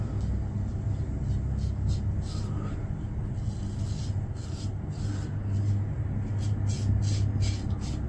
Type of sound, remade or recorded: recorded